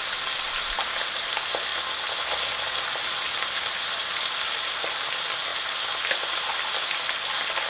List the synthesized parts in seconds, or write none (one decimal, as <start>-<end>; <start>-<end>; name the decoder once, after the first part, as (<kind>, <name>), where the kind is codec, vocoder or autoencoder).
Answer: none